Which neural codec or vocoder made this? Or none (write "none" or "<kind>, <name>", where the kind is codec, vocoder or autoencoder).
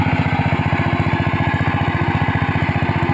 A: none